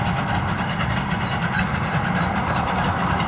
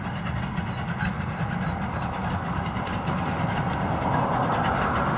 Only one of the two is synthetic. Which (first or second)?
first